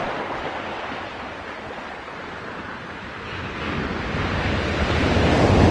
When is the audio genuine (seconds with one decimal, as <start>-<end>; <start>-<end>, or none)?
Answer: 0.8-5.7